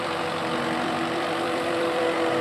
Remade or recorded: remade